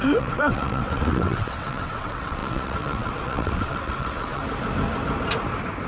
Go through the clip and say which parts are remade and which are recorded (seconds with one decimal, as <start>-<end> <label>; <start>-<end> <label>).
0.0-4.4 remade; 4.4-5.9 recorded